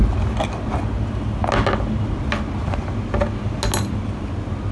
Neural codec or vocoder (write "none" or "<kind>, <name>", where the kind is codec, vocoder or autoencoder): none